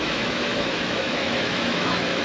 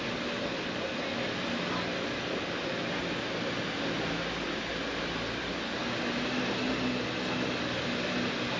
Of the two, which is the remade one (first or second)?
first